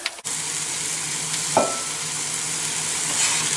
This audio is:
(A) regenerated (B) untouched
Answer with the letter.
B